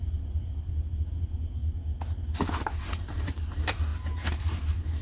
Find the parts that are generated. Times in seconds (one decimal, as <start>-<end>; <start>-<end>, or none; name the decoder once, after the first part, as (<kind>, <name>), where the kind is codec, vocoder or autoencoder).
0.0-1.6 (vocoder, BigVGAN v2); 2.9-3.9; 4.4-5.0